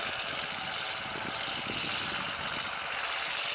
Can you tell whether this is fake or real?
real